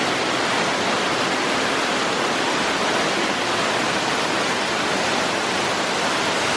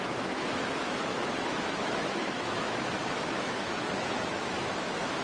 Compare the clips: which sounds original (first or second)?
first